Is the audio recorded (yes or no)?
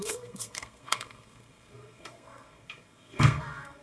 no